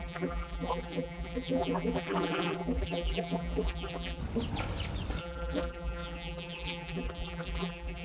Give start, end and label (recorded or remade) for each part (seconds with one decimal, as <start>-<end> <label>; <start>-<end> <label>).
0.0-4.2 remade; 4.2-5.2 recorded; 5.2-8.0 remade